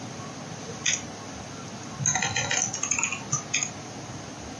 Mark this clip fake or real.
real